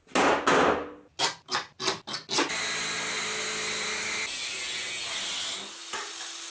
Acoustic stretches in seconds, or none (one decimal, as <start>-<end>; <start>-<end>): 0.0-6.5